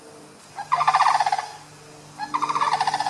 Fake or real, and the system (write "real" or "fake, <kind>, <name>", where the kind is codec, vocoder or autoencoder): real